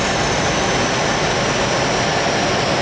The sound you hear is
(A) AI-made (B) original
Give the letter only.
B